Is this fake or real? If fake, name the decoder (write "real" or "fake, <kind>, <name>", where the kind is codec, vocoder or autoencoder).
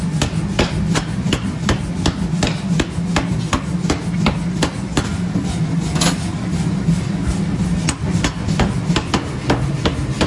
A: real